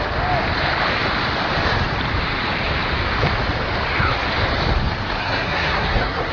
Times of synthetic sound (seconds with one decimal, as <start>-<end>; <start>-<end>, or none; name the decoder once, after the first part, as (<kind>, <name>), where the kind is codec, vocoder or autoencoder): 5.2-6.3 (codec, SNAC)